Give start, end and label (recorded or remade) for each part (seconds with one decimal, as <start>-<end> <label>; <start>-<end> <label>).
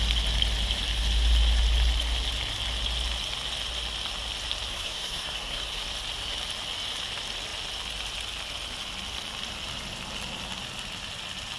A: 0.0-4.7 recorded; 4.7-5.8 remade; 5.8-11.6 recorded